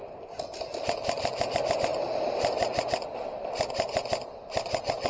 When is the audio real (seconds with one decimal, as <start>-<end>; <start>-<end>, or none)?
0.0-5.1